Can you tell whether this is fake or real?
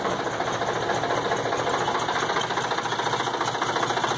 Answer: real